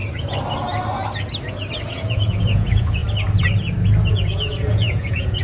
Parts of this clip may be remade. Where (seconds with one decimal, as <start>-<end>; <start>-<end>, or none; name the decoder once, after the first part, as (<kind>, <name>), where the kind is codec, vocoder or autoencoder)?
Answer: 1.9-3.0 (vocoder, Vocos); 4.1-5.4